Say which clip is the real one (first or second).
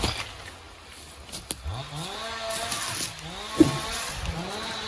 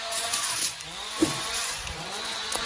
first